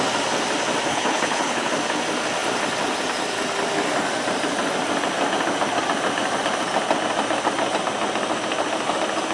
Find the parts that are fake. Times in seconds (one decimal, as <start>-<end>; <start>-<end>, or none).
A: 0.9-1.7